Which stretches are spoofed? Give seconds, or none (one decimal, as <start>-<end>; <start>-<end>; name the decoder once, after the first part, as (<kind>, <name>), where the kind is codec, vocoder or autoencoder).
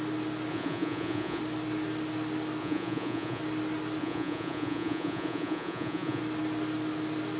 0.5-1.4 (vocoder, Vocos); 2.6-3.4; 4.0-6.2